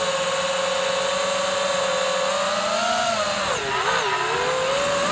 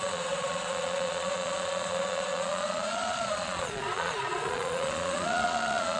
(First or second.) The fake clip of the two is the second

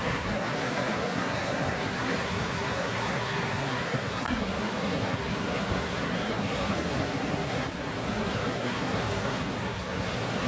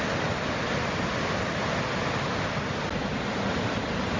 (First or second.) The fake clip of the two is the first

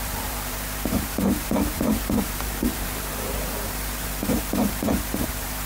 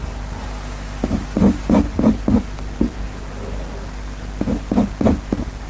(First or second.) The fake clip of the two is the first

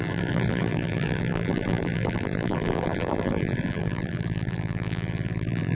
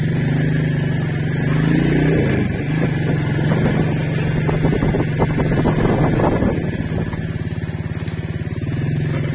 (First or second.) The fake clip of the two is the first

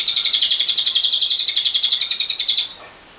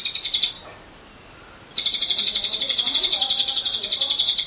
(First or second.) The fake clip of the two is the second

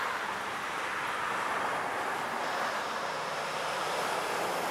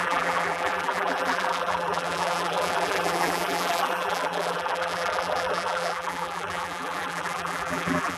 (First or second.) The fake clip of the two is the second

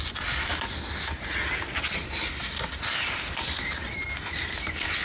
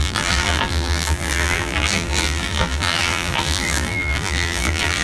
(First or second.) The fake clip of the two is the second